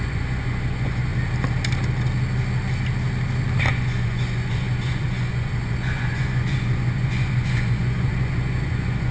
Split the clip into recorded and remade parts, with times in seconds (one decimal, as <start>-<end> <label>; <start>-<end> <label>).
0.0-1.1 remade; 1.1-3.7 recorded; 3.7-9.1 remade